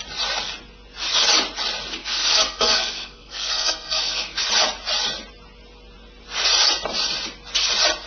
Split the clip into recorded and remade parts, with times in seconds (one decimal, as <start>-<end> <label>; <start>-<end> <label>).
0.0-2.0 recorded; 2.0-4.4 remade; 4.4-8.1 recorded